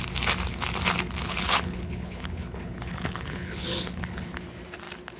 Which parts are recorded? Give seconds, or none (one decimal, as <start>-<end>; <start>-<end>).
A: 0.0-1.2; 4.3-5.2